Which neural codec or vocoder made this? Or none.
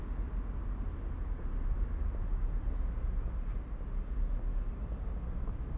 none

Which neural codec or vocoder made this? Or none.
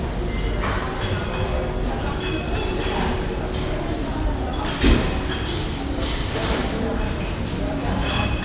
none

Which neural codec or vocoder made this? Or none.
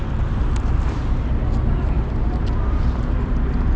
none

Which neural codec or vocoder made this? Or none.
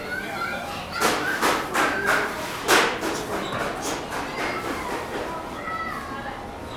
none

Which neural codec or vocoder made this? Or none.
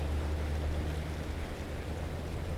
none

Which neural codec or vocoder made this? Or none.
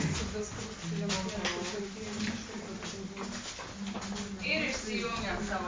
none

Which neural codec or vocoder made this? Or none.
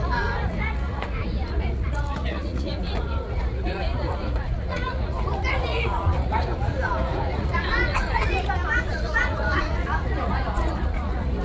vocoder, Vocos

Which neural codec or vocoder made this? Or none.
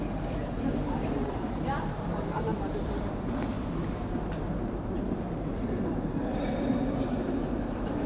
vocoder, BigVGAN v2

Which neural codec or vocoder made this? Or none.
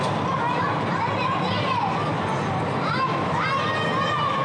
none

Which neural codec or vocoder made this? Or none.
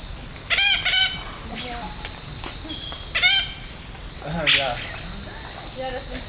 none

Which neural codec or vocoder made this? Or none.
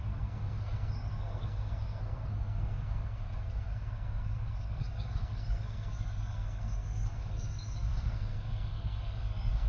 codec, SNAC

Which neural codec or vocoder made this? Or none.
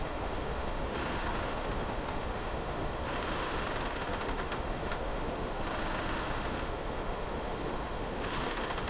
autoencoder, DAC-VAE